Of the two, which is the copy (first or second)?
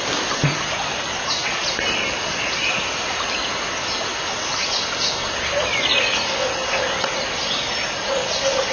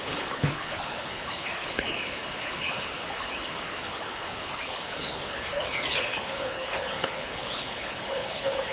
second